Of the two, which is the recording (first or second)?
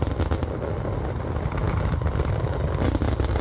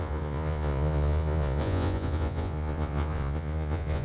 first